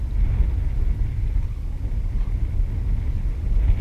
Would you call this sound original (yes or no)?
yes